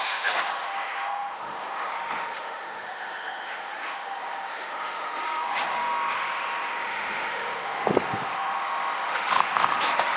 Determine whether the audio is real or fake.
fake